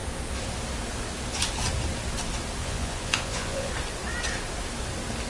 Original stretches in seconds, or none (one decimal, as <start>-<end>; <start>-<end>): 0.0-2.6; 3.7-5.3